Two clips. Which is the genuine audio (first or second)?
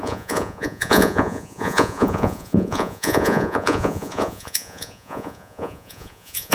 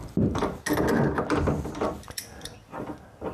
second